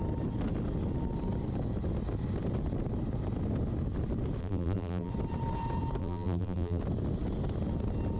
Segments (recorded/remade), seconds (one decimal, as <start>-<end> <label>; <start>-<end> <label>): 0.0-4.4 recorded; 4.4-5.1 remade; 5.1-6.0 recorded; 6.0-6.8 remade; 6.8-8.2 recorded